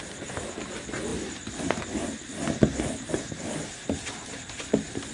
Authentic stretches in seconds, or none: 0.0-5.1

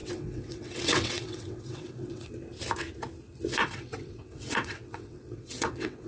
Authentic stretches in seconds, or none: 2.3-3.6